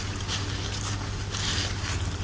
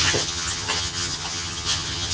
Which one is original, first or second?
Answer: first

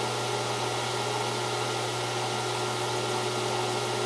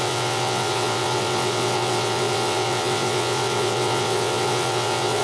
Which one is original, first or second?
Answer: first